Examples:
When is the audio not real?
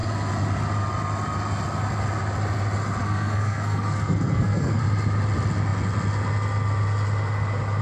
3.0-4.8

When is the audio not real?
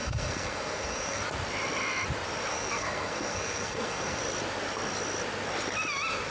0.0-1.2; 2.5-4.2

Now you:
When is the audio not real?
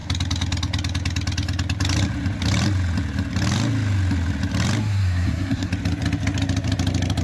4.8-5.7